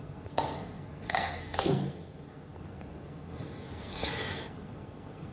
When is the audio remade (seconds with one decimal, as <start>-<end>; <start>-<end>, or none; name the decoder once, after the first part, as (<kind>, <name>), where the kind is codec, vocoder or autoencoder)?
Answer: 0.0-5.3 (codec, SNAC)